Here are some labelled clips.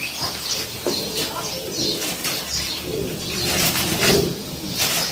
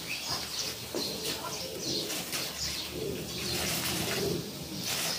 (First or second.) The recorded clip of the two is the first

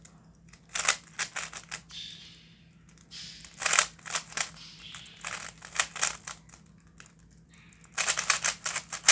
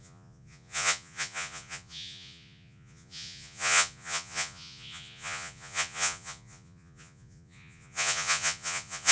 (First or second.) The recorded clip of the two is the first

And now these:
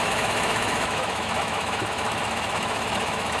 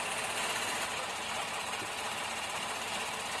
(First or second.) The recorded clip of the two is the second